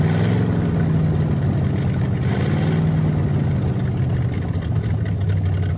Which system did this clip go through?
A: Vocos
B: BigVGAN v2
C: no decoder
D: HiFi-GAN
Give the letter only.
C